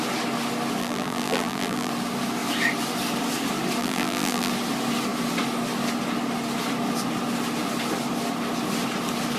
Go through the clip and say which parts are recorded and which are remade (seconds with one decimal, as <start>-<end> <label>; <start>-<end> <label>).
0.0-0.8 recorded; 0.8-1.9 remade; 1.9-3.8 recorded; 3.8-4.5 remade; 4.5-9.4 recorded